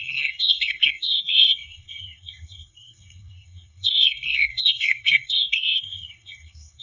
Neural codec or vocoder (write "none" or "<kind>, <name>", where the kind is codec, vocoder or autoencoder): codec, SNAC